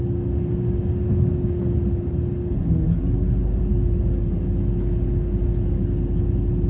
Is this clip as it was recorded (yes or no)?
yes